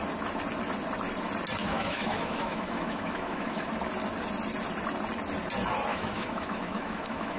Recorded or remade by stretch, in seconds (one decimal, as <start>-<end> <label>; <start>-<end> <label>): 0.0-1.6 recorded; 1.6-3.7 remade; 3.7-5.9 recorded; 5.9-7.4 remade